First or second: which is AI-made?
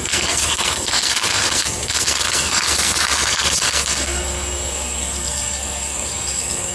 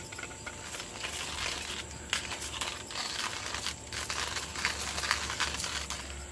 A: first